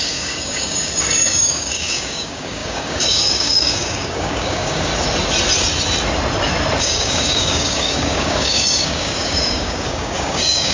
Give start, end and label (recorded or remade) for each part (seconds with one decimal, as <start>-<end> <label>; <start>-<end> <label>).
0.0-4.9 remade; 4.9-6.8 recorded; 6.8-10.7 remade